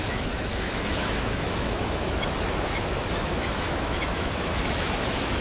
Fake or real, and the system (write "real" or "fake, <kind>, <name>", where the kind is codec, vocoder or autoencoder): fake, autoencoder, DAC-VAE